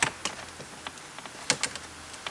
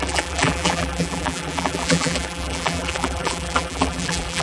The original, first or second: first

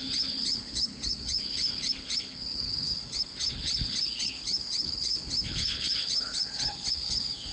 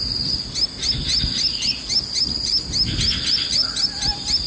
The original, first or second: second